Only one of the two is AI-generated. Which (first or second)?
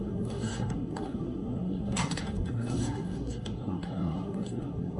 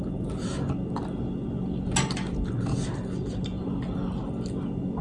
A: first